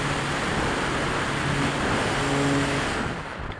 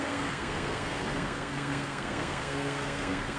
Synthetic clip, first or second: second